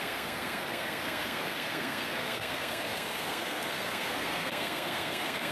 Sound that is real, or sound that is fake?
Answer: fake